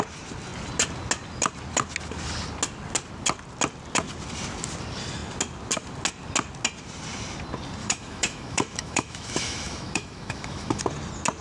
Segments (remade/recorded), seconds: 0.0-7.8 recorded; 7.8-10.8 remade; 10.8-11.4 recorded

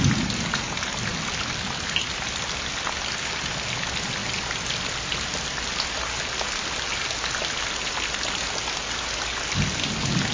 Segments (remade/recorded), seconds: 0.0-10.3 recorded